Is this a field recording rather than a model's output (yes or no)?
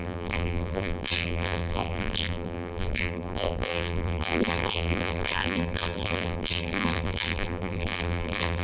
no